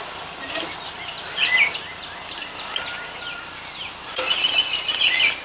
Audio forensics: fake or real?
real